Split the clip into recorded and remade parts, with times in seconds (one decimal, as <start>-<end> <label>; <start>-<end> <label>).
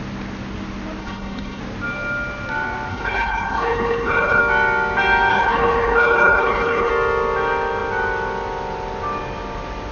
0.0-1.0 recorded; 1.0-1.6 remade; 1.6-2.9 recorded; 2.9-4.4 remade; 4.4-5.3 recorded; 5.3-6.9 remade; 6.9-9.9 recorded